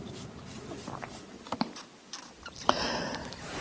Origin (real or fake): fake